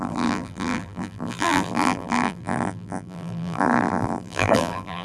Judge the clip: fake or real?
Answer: fake